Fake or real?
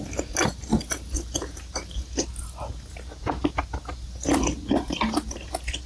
real